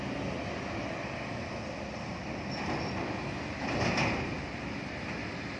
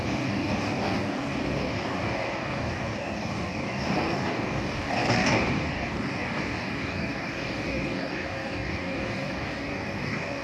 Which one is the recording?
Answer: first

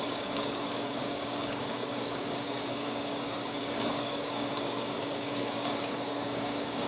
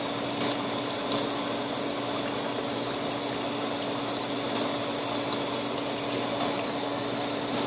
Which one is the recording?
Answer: second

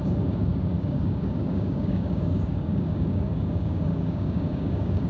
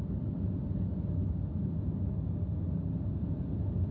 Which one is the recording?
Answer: second